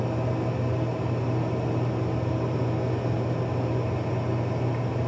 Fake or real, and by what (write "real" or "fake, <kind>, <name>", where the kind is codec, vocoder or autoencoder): real